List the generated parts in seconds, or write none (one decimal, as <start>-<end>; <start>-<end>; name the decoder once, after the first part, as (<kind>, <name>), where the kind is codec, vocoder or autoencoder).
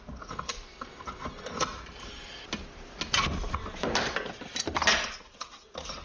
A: none